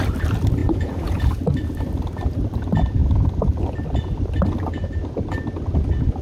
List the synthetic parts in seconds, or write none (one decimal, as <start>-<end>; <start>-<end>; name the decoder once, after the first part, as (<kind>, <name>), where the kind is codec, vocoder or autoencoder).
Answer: 0.6-1.4 (vocoder, Vocos)